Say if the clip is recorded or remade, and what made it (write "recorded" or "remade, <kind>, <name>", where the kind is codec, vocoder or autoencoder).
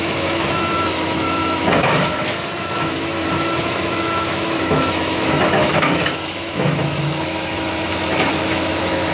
remade, autoencoder, DAC-VAE